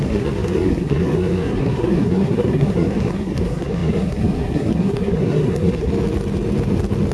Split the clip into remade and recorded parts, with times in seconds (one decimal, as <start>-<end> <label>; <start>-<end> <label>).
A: 0.0-5.9 remade; 5.9-7.1 recorded